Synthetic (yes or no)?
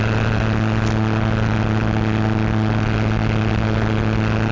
no